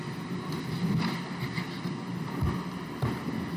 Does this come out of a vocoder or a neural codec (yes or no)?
no